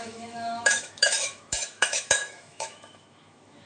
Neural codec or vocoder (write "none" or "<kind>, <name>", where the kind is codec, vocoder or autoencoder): autoencoder, DAC-VAE